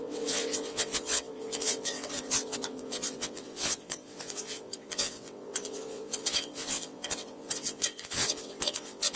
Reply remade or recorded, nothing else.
remade